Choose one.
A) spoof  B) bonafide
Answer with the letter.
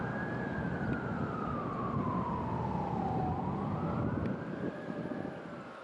B